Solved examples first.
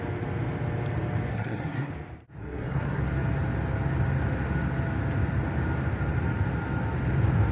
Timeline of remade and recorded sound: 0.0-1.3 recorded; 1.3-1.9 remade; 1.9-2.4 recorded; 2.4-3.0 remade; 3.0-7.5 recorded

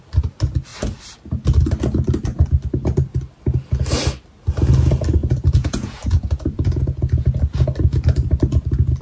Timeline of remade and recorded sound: 0.0-5.2 recorded; 5.2-7.4 remade; 7.4-9.0 recorded

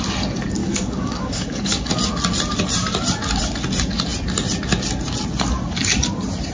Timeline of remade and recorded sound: 0.0-0.6 recorded; 0.6-1.9 remade; 1.9-6.5 recorded

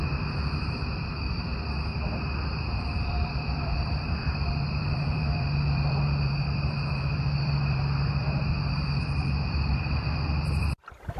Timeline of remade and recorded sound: 0.0-1.5 remade; 1.5-2.8 recorded; 2.8-11.2 remade

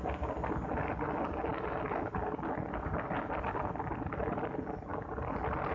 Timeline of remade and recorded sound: 0.0-5.7 recorded

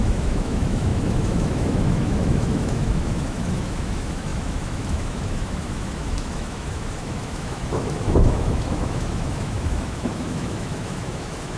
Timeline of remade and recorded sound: 0.0-11.6 remade

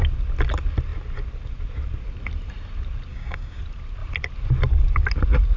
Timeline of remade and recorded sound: 0.0-3.1 recorded; 3.1-3.6 remade; 3.6-5.6 recorded

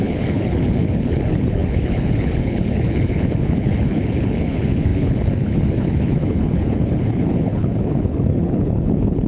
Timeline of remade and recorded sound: 0.0-9.3 remade